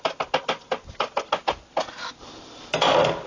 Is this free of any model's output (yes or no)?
yes